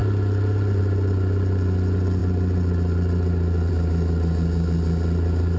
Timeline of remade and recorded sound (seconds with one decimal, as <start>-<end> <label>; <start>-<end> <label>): 0.0-5.6 recorded